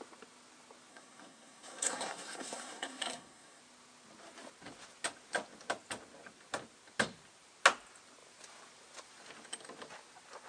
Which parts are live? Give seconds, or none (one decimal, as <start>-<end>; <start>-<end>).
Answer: 0.0-0.9; 3.6-10.5